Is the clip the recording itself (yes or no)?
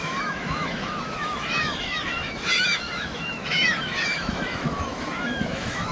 no